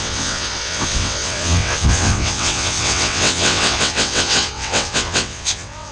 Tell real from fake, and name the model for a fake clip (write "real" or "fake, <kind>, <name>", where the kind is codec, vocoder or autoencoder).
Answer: fake, vocoder, WaveNeXt